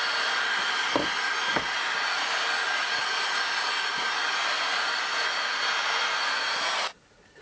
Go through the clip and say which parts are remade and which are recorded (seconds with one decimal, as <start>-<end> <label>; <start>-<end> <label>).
0.0-7.4 recorded